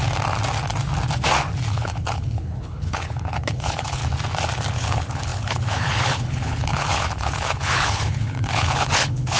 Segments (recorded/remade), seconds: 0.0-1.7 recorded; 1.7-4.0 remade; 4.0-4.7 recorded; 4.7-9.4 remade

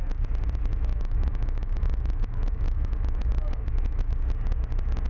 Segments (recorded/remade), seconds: 0.0-0.9 recorded; 0.9-4.0 remade; 4.0-5.1 recorded

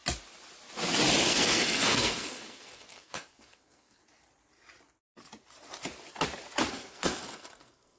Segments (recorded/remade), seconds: 0.0-1.2 recorded; 1.2-4.0 remade; 4.0-6.7 recorded; 6.7-8.0 remade

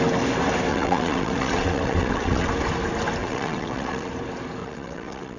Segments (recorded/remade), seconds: 0.0-0.7 recorded; 0.7-2.5 remade; 2.5-3.2 recorded; 3.2-4.1 remade; 4.1-4.6 recorded; 4.6-5.4 remade

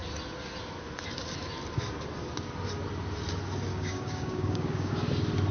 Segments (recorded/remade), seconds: 0.0-3.7 recorded; 3.7-4.9 remade; 4.9-5.5 recorded